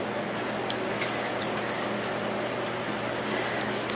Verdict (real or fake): real